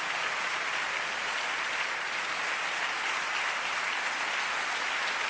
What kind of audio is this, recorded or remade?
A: recorded